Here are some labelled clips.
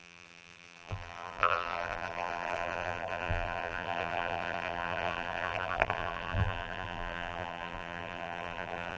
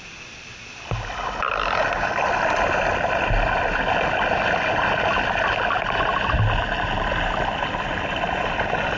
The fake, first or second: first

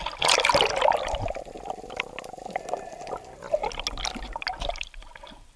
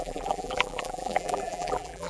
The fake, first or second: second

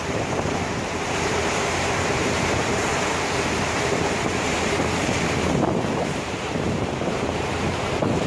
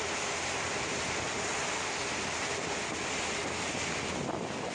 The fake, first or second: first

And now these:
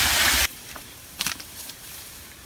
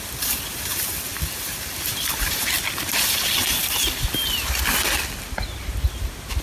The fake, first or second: first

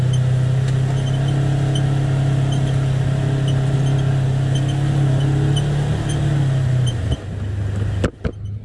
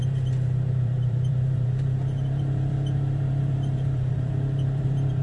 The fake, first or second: second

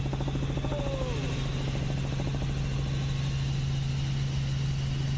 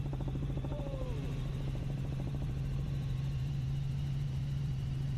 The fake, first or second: second